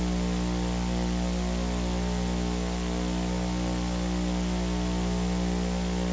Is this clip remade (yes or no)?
no